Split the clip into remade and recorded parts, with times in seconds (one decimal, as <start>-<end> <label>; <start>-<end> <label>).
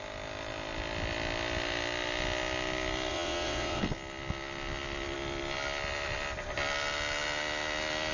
0.0-3.1 recorded; 3.1-3.8 remade; 3.8-8.1 recorded